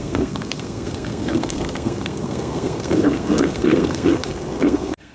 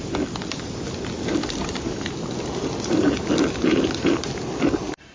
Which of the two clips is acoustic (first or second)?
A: second